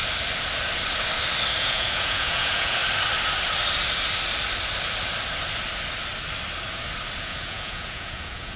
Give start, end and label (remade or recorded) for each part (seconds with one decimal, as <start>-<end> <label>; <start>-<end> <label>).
0.0-1.6 recorded; 1.6-2.8 remade; 2.8-7.2 recorded; 7.2-8.6 remade